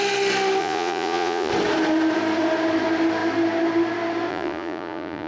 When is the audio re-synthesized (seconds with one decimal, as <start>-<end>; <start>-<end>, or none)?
0.6-1.5; 4.3-5.3